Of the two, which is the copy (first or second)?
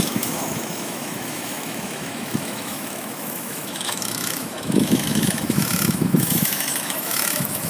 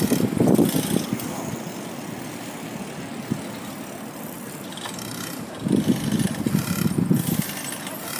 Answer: first